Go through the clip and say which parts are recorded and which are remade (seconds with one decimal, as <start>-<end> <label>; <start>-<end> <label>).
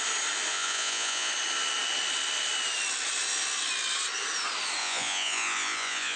0.0-0.5 recorded; 0.5-1.3 remade; 1.3-4.8 recorded; 4.8-6.2 remade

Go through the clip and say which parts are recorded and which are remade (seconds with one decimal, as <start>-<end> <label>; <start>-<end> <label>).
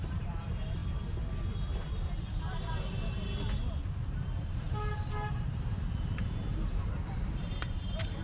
0.0-0.8 remade; 0.8-1.4 recorded; 1.4-8.2 remade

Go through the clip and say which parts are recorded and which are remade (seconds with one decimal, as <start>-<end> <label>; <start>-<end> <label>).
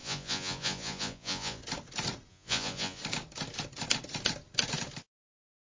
0.0-1.6 remade; 1.6-2.3 recorded; 2.3-3.0 remade; 3.0-5.0 recorded; 5.0-5.8 remade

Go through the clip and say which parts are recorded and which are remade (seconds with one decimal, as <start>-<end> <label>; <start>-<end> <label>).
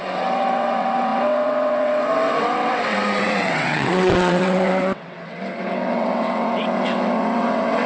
0.0-7.9 remade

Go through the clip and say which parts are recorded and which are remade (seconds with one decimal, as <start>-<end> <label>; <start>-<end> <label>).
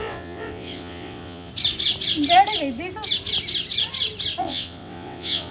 0.0-1.5 remade; 1.5-4.4 recorded; 4.4-5.5 remade